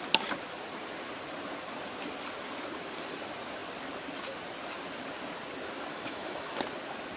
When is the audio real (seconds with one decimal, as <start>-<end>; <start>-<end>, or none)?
0.0-5.9; 6.6-7.2